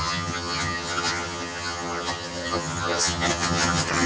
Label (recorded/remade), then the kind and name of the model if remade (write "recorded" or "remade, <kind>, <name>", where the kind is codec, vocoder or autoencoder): remade, vocoder, HiFi-GAN